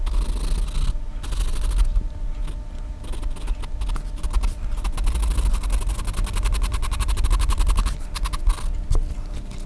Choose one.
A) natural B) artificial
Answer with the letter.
A